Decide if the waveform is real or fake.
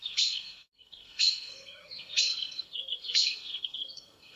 fake